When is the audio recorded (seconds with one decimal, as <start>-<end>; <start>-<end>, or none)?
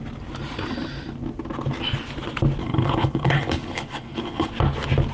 0.0-2.6; 4.5-5.1